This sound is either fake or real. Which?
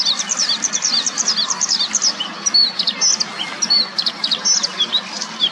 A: real